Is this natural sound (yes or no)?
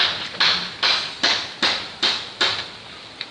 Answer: yes